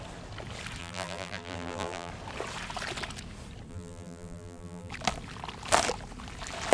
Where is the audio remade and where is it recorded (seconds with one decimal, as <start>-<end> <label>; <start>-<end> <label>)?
0.0-0.8 recorded; 0.8-2.1 remade; 2.1-3.7 recorded; 3.7-4.9 remade; 4.9-6.7 recorded